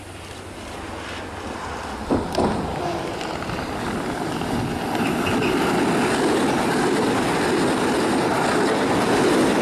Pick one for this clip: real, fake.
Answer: real